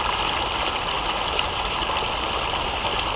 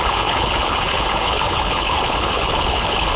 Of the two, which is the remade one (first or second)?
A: second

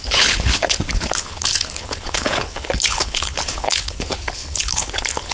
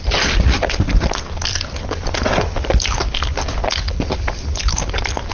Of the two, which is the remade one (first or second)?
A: first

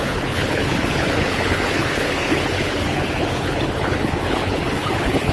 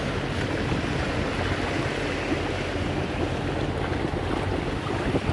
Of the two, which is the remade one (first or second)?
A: first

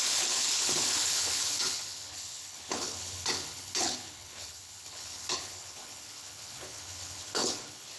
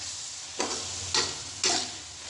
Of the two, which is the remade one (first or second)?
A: first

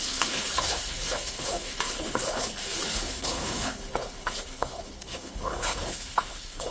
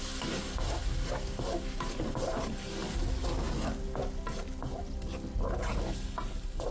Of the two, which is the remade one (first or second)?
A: first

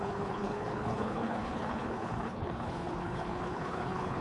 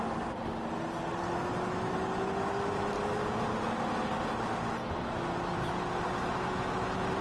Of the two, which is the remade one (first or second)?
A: first